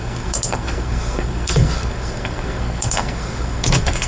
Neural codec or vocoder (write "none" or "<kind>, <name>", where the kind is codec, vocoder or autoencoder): codec, SNAC